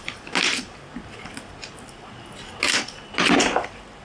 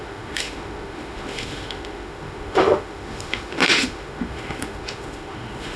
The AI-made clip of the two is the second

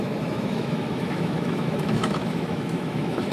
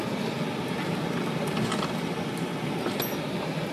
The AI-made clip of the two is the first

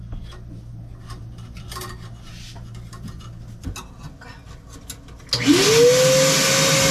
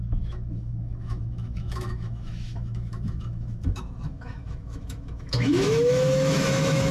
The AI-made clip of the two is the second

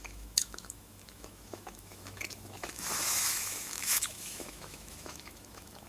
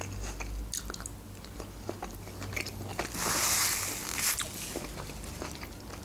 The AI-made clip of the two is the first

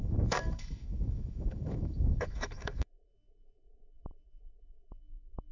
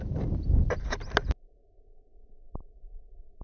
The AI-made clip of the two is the first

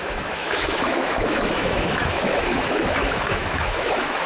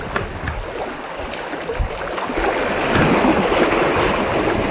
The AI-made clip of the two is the first